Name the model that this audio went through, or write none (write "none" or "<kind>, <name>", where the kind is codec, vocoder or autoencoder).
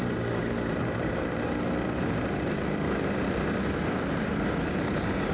vocoder, BigVGAN v2